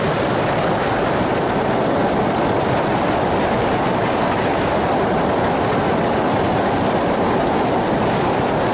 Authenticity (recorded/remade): recorded